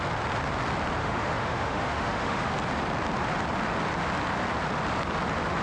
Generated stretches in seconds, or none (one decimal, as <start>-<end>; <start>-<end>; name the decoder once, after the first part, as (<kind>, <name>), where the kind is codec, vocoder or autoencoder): 1.0-2.5 (autoencoder, DAC-VAE)